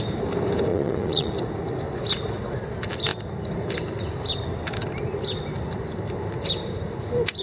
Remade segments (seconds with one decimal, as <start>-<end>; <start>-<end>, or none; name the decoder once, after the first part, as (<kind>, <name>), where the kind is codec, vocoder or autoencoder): 0.7-1.3 (vocoder, Vocos)